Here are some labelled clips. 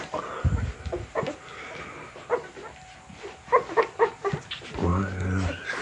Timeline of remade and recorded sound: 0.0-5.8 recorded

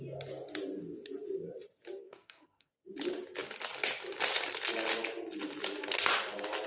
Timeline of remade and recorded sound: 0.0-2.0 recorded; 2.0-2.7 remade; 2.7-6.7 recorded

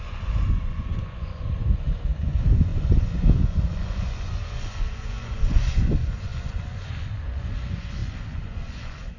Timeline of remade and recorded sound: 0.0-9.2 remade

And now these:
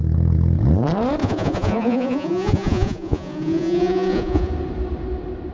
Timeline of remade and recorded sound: 0.0-1.2 recorded; 1.2-4.5 remade; 4.5-5.5 recorded